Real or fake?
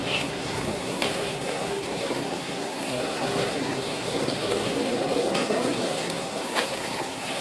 fake